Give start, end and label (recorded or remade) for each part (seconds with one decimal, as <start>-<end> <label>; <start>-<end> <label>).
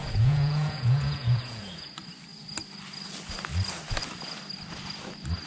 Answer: 0.0-1.9 remade; 1.9-5.5 recorded